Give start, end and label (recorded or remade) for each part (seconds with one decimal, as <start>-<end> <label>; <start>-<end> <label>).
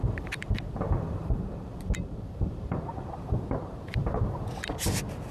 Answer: 0.0-1.2 recorded; 1.2-4.4 remade; 4.4-5.3 recorded